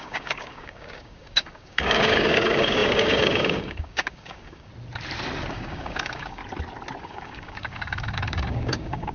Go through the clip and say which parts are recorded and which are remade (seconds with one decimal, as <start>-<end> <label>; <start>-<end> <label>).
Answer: 0.0-4.7 remade; 4.7-5.5 recorded; 5.5-6.4 remade; 6.4-7.0 recorded; 7.0-9.1 remade